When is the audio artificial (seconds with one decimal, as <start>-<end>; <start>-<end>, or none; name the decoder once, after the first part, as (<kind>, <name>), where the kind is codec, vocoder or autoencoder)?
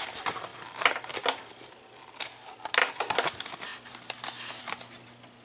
none